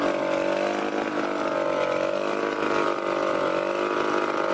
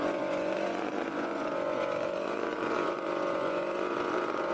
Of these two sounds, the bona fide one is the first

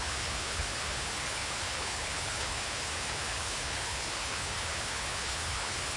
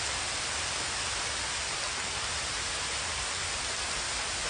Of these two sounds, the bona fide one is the second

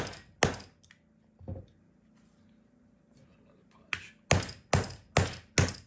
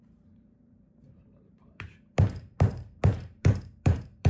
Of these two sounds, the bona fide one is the first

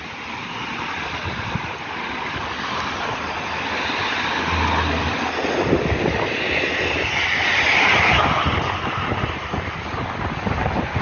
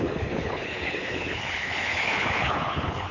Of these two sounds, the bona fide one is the first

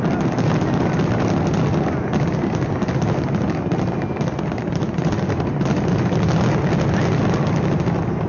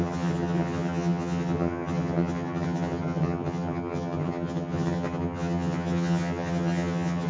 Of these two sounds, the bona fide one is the first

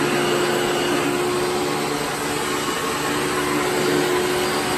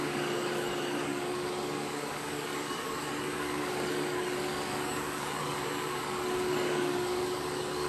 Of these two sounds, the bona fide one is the first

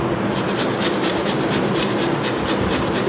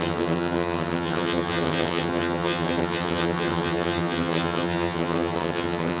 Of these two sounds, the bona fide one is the first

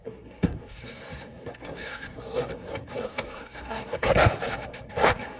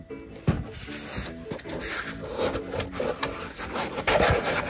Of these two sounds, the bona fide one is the second